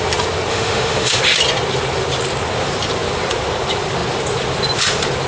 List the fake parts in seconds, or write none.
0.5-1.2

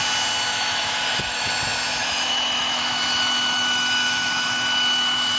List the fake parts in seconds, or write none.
0.5-1.5; 2.0-5.4